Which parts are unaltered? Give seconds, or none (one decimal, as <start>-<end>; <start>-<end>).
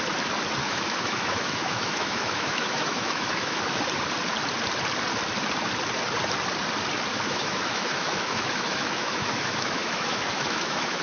0.0-0.6; 3.8-7.1